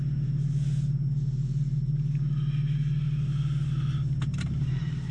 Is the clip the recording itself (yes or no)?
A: yes